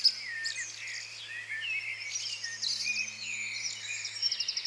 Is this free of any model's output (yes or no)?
yes